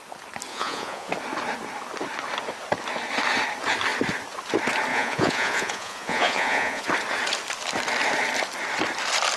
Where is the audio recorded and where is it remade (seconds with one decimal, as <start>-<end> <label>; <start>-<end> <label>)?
0.0-0.5 recorded; 0.5-1.1 remade; 1.1-4.9 recorded; 4.9-6.9 remade; 6.9-9.4 recorded